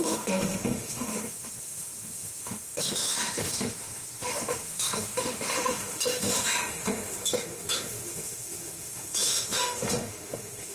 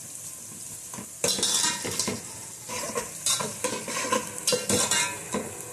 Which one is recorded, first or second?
second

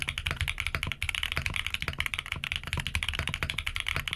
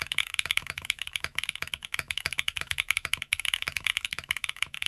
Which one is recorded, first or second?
first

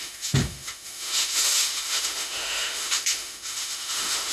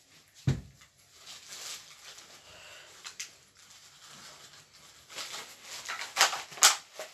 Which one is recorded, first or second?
second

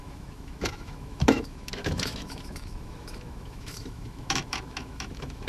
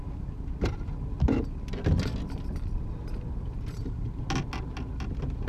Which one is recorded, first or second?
second